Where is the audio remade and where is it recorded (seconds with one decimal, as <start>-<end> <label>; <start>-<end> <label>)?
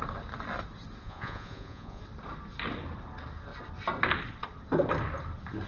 0.0-1.0 recorded; 1.0-2.0 remade; 2.0-5.7 recorded